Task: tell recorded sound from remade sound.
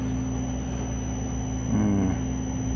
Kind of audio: recorded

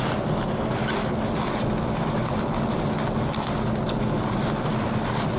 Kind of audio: recorded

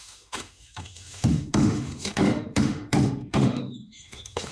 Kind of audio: remade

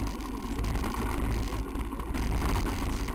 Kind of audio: recorded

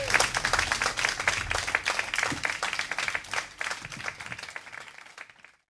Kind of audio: recorded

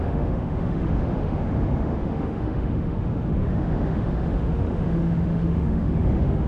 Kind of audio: remade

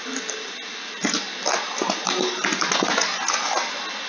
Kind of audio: recorded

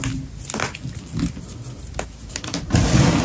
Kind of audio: recorded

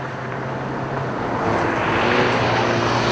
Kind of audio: recorded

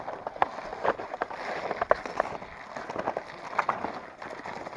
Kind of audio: recorded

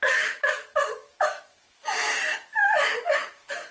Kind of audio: remade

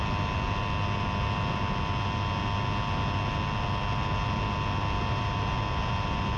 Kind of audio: recorded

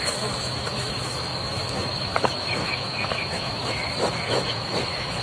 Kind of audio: remade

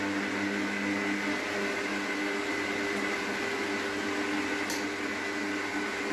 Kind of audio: recorded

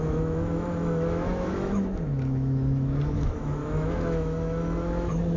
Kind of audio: remade